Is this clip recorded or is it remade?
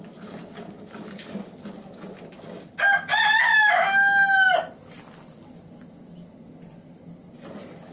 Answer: recorded